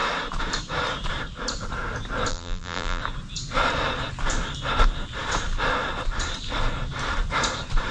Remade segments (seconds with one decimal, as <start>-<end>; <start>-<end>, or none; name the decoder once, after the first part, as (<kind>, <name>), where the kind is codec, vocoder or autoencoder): 2.3-3.0 (vocoder, BigVGAN v2)